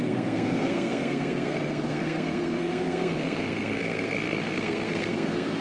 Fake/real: fake